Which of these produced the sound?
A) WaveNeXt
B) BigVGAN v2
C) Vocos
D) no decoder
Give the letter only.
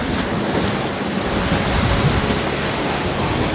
D